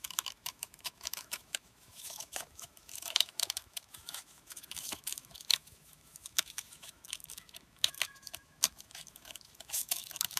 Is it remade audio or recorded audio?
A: remade